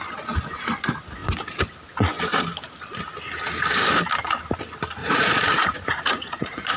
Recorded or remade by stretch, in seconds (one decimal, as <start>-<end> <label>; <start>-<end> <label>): 0.0-5.0 recorded; 5.0-6.8 remade

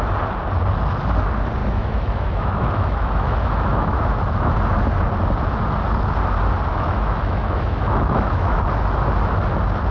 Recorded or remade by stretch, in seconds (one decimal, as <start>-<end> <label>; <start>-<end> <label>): 0.0-1.6 recorded; 1.6-4.5 remade; 4.5-6.7 recorded; 6.7-8.6 remade; 8.6-9.9 recorded

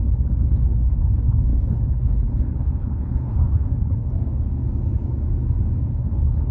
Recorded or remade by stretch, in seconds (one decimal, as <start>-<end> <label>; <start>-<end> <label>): 0.0-4.1 remade; 4.1-5.9 recorded; 5.9-6.5 remade

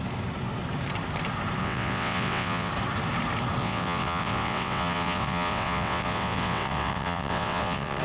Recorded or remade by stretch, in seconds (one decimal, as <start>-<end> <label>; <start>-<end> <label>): 0.0-1.6 recorded; 1.6-2.7 remade; 2.7-3.6 recorded; 3.6-8.0 remade

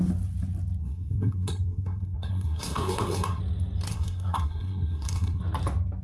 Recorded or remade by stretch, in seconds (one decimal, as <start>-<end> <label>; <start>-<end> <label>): 0.0-0.8 recorded; 0.8-3.4 remade; 3.4-3.9 recorded; 3.9-5.4 remade; 5.4-6.0 recorded